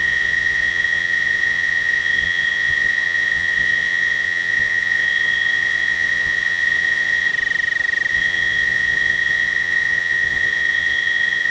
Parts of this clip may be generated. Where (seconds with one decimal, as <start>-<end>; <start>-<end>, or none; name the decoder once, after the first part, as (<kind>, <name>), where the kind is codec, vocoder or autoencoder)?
0.0-7.3 (vocoder, Vocos); 8.1-11.5

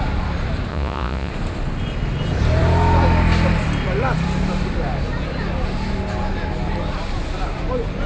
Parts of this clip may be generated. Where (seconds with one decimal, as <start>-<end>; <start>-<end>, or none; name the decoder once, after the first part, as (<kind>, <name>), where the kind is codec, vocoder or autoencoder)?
0.7-1.3 (vocoder, Vocos)